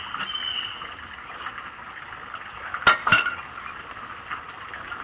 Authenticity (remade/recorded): recorded